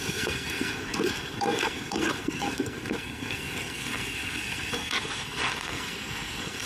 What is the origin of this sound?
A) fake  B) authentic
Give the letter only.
A